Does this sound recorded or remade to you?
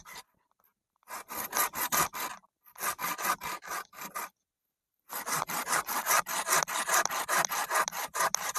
recorded